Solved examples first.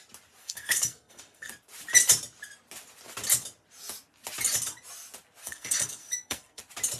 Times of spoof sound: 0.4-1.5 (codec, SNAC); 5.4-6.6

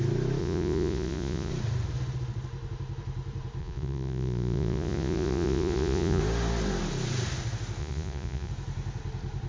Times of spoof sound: 0.4-1.5 (vocoder, Vocos); 3.6-6.2; 7.8-8.5

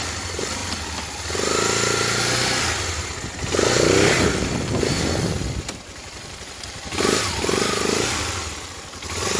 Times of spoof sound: 0.0-0.6 (vocoder, BigVGAN v2); 4.8-9.4

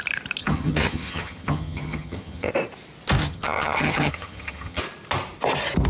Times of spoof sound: 0.4-2.5 (vocoder, HiFi-GAN); 3.2-4.8

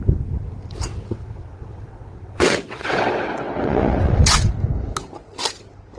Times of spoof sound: 0.9-4.5 (vocoder, WaveNeXt)

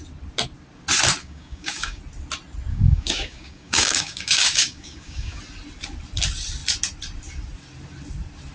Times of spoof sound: 1.2-2.0 (codec, DAC); 2.7-5.4